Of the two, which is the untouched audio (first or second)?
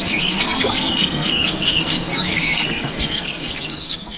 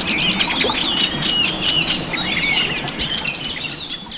second